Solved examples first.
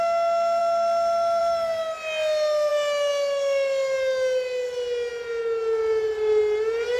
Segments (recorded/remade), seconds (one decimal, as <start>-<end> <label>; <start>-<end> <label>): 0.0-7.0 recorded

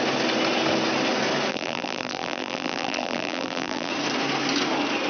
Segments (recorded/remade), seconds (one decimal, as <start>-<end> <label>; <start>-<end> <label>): 0.0-1.5 recorded; 1.5-3.9 remade; 3.9-5.1 recorded

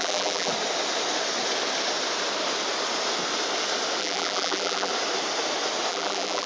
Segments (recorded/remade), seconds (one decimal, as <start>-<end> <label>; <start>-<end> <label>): 0.0-0.5 remade; 0.5-4.0 recorded; 4.0-4.9 remade; 4.9-5.9 recorded; 5.9-6.5 remade

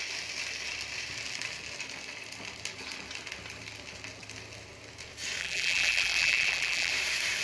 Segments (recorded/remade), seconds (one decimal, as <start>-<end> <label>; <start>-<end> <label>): 0.0-5.4 recorded; 5.4-6.9 remade; 6.9-7.4 recorded